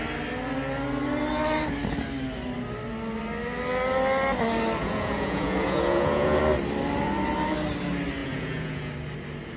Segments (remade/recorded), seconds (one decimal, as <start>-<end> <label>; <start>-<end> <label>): 0.0-4.8 recorded; 4.8-6.4 remade; 6.4-8.2 recorded; 8.2-8.9 remade; 8.9-9.6 recorded